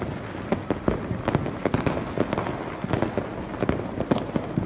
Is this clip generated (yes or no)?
no